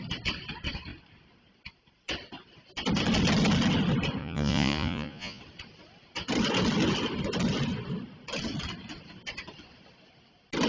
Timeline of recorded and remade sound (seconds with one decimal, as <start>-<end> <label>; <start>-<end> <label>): 0.0-4.2 recorded; 4.2-5.4 remade; 5.4-10.7 recorded